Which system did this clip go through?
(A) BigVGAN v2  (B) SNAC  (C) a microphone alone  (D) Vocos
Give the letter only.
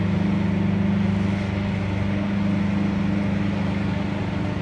C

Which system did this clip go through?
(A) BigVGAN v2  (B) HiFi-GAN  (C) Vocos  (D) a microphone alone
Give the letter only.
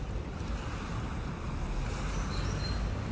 D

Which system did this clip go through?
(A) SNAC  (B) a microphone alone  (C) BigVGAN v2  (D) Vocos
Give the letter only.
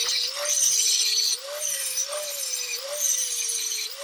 C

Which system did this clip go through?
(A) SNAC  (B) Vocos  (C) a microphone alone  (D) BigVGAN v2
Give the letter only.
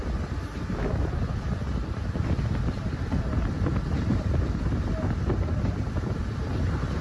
C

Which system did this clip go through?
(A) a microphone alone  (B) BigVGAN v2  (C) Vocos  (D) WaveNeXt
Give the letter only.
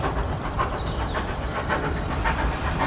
A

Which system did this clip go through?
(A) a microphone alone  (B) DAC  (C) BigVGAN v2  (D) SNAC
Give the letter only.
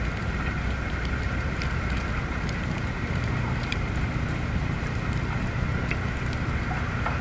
C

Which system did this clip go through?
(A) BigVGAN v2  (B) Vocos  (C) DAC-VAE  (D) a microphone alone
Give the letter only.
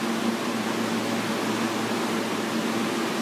D